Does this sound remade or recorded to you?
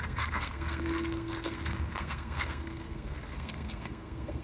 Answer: remade